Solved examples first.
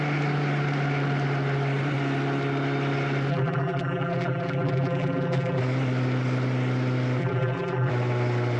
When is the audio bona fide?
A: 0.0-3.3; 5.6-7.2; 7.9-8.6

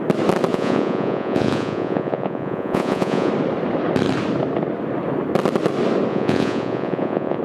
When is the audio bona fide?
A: 0.0-0.5; 3.3-6.1

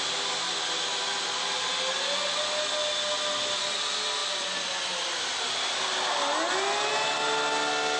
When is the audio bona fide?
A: 0.0-8.0

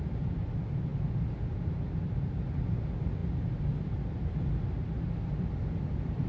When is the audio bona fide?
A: 0.0-6.3

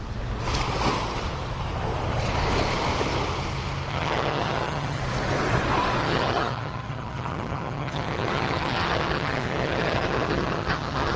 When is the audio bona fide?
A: 0.0-3.9; 5.0-6.0

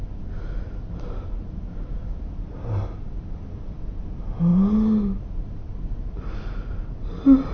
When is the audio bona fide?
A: 0.0-7.5